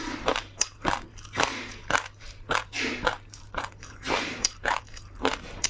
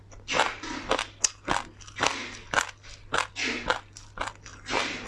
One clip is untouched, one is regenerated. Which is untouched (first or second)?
second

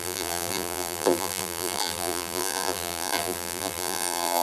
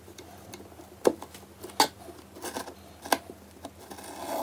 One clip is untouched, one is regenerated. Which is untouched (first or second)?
second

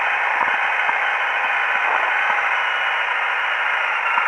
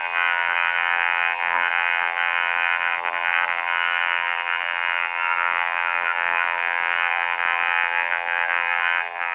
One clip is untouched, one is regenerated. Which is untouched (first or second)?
first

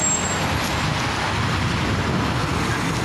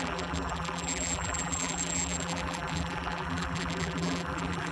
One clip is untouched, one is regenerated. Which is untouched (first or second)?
first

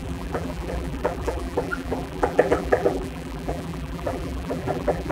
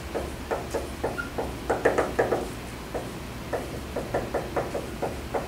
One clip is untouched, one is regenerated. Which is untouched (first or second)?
second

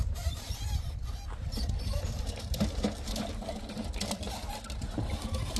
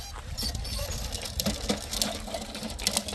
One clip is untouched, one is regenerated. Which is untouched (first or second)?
second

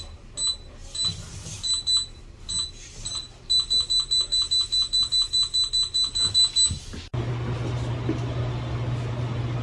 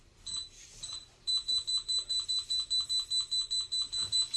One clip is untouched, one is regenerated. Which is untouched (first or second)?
first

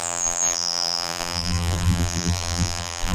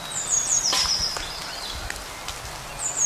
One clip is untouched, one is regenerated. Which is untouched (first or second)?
second